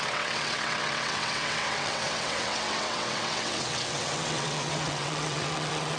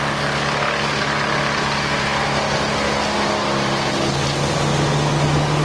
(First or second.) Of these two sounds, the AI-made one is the first